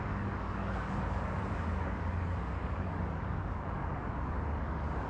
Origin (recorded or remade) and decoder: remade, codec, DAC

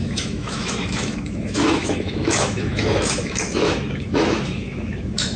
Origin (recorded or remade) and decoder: remade, autoencoder, DAC-VAE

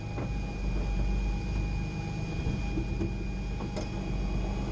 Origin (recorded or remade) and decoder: recorded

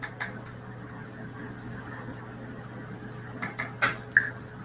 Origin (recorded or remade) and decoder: recorded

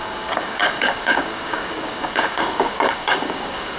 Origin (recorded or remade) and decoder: remade, codec, DAC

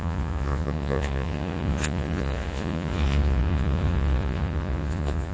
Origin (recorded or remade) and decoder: remade, vocoder, Vocos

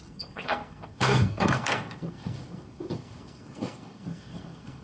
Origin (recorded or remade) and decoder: remade, codec, SNAC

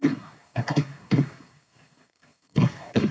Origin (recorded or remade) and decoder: remade, codec, SNAC